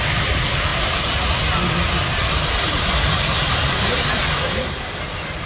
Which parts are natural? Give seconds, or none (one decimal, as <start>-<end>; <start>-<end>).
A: 0.0-0.7; 1.2-2.1